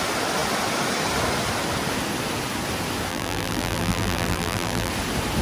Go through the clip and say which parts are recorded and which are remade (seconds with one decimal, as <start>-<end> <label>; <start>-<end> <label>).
0.0-3.1 recorded; 3.1-4.9 remade; 4.9-5.4 recorded